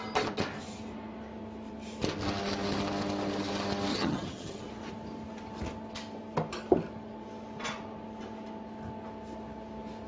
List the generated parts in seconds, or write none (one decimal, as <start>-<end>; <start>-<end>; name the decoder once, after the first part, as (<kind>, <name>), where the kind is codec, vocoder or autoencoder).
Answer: 3.9-4.6 (vocoder, HiFi-GAN)